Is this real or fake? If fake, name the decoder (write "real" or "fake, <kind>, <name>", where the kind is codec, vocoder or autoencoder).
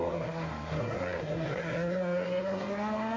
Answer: fake, codec, SNAC